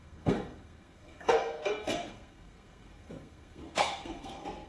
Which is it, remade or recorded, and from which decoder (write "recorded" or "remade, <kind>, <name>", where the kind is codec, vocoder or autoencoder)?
remade, codec, SNAC